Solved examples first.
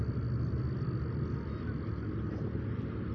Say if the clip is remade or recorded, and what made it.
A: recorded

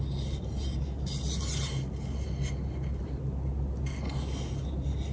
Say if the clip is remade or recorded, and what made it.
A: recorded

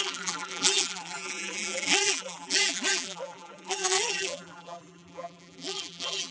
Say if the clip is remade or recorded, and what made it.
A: remade, vocoder, BigVGAN v2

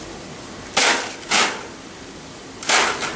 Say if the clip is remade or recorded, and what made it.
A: recorded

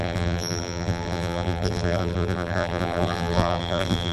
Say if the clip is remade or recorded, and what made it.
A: remade, vocoder, BigVGAN v2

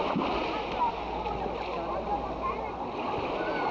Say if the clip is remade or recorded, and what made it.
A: recorded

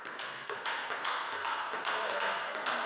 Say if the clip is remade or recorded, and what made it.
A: remade, codec, SNAC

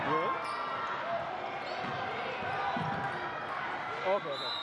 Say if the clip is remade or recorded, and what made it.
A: recorded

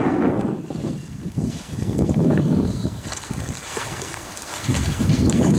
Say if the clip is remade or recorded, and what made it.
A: remade, codec, SNAC